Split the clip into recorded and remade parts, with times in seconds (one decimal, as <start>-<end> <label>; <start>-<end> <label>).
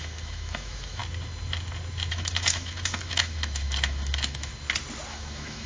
0.0-1.0 remade; 1.0-2.1 recorded; 2.1-4.5 remade; 4.5-5.1 recorded; 5.1-5.7 remade